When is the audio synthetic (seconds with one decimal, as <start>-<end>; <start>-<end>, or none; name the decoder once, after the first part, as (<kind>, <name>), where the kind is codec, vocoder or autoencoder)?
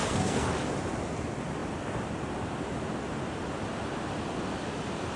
0.0-0.5 (codec, SNAC)